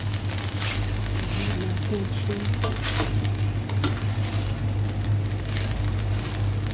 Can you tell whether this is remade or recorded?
recorded